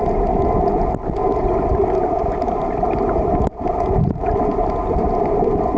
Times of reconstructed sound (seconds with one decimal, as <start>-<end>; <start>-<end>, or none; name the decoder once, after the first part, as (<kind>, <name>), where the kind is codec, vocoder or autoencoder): none